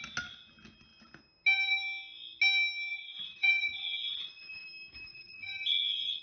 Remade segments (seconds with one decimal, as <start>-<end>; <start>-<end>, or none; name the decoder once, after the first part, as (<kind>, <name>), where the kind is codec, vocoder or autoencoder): 2.9-4.6 (vocoder, Vocos); 5.1-6.2

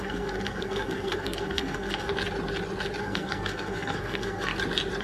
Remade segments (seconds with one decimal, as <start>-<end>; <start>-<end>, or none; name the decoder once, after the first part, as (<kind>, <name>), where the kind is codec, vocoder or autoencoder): 0.0-2.1 (codec, SNAC); 3.0-4.5

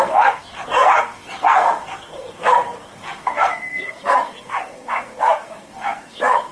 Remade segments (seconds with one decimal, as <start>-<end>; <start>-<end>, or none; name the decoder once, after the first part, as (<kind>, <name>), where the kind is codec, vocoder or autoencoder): 0.0-6.5 (codec, SNAC)

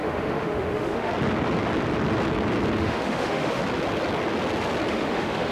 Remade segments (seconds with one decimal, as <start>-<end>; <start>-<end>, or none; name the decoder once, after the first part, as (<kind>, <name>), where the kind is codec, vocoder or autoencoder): 0.0-1.1 (autoencoder, DAC-VAE); 2.8-3.6; 4.9-5.5

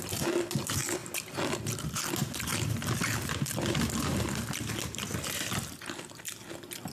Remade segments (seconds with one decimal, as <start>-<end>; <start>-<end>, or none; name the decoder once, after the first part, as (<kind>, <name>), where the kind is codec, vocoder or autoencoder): none

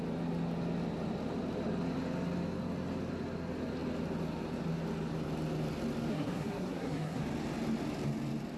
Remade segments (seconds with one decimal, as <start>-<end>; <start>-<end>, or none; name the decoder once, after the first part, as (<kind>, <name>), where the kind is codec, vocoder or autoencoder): 6.1-7.2 (codec, SNAC)